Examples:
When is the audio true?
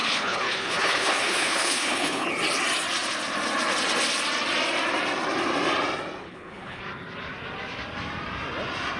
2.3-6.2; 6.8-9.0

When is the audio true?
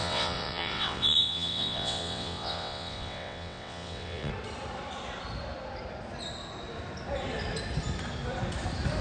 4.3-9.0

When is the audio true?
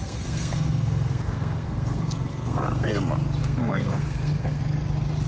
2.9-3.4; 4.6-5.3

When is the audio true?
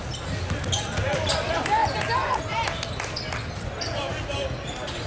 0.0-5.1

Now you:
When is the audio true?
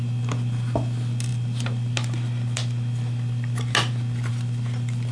0.0-5.1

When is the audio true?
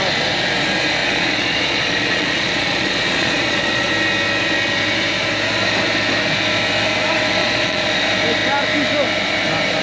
0.0-1.0; 3.9-7.4; 7.9-9.8